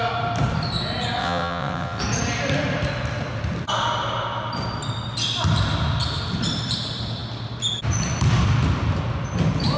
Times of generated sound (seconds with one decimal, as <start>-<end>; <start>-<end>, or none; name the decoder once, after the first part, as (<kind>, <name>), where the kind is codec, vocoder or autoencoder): 1.2-2.0 (vocoder, WaveNeXt)